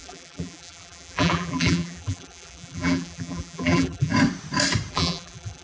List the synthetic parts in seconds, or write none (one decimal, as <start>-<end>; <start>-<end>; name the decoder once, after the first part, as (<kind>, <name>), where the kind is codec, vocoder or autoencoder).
0.0-4.1 (vocoder, BigVGAN v2); 4.9-5.6